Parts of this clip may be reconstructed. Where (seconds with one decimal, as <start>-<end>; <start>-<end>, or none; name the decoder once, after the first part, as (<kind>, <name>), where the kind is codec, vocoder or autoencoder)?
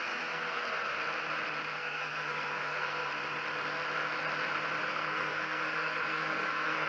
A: 0.0-1.0 (codec, SNAC); 1.7-3.1; 4.9-6.9